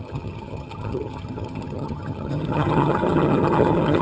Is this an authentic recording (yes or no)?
no